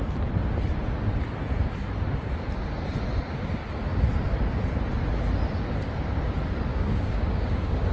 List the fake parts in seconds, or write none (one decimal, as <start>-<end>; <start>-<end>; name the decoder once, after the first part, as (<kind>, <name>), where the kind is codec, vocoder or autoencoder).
6.7-7.9 (codec, DAC)